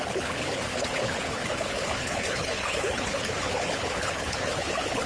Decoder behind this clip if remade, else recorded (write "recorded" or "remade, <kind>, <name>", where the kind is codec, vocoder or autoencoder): remade, codec, HILCodec